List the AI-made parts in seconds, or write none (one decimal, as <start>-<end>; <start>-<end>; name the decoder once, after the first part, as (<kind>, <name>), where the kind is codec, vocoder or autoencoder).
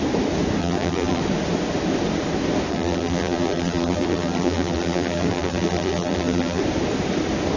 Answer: 0.6-1.2 (vocoder, BigVGAN v2); 2.7-6.6